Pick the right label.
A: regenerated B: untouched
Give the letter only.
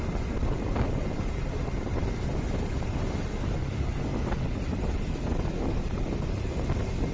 B